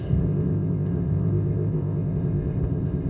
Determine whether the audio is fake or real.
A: fake